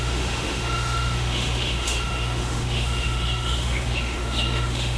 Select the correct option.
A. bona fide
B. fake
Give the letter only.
B